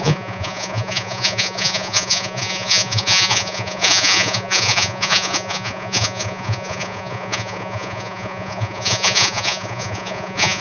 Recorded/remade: remade